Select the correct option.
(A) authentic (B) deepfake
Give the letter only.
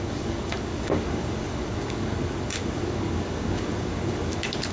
B